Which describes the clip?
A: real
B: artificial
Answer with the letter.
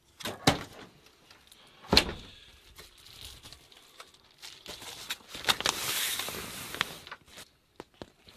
A